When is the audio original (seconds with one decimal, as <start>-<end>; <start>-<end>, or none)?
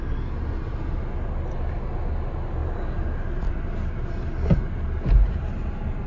0.0-6.1